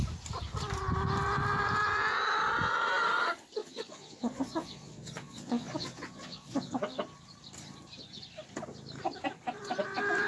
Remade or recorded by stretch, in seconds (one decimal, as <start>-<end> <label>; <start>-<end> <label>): 0.0-3.6 recorded; 3.6-6.8 remade; 6.8-10.3 recorded